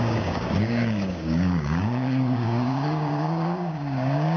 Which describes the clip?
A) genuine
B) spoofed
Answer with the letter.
B